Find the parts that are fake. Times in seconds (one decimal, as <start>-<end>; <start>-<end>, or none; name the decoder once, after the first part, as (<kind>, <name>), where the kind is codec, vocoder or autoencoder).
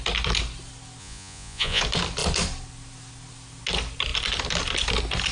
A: 1.0-1.8 (vocoder, Vocos)